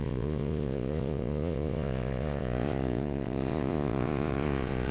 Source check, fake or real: fake